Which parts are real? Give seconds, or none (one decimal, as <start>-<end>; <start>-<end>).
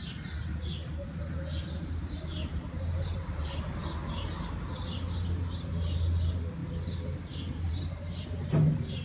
0.0-9.0